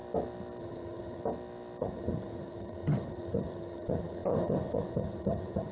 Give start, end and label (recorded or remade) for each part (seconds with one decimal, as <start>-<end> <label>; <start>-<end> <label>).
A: 0.0-0.6 recorded; 0.6-1.2 remade; 1.2-1.8 recorded; 1.8-5.7 remade